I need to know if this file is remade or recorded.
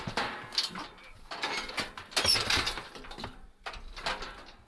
recorded